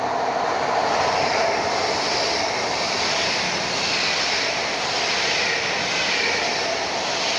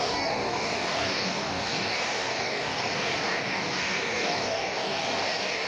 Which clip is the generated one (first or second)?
second